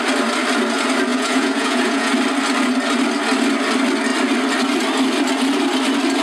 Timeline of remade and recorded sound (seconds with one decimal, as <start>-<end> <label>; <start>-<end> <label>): 0.0-1.1 recorded; 1.1-2.1 remade; 2.1-6.2 recorded